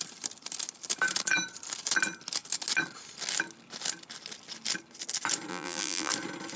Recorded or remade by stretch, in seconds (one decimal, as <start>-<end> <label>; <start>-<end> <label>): 0.0-5.5 recorded; 5.5-6.1 remade; 6.1-6.6 recorded